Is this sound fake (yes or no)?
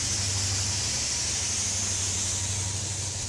no